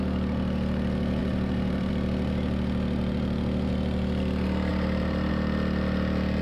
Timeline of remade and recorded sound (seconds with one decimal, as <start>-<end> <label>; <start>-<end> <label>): 0.0-1.2 recorded; 1.2-1.9 remade; 1.9-4.7 recorded; 4.7-5.3 remade; 5.3-6.4 recorded